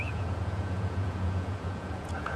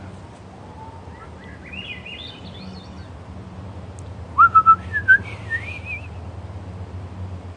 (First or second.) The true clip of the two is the second